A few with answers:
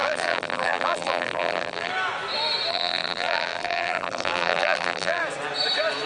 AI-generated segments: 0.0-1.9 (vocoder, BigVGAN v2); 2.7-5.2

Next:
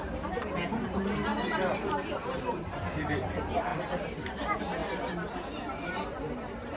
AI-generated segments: 0.0-1.3 (vocoder, BigVGAN v2); 1.9-3.7; 4.3-4.8; 6.1-6.8

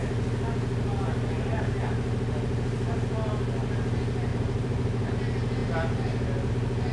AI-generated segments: 4.3-5.1 (vocoder, BigVGAN v2)

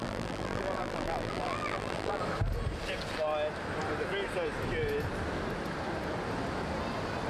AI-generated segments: 0.0-2.2 (vocoder, BigVGAN v2)

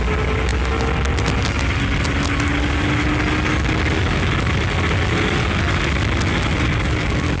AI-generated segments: none

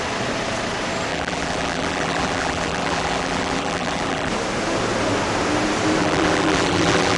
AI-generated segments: 1.1-4.3 (vocoder, BigVGAN v2); 6.0-7.2

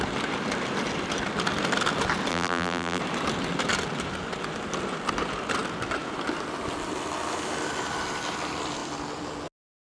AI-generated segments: 2.3-3.0 (vocoder, BigVGAN v2)

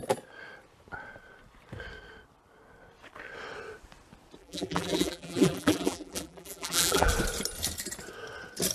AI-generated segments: 4.4-7.1 (vocoder, BigVGAN v2)